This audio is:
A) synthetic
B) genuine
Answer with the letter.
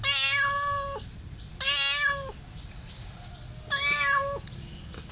B